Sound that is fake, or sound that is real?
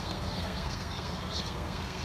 fake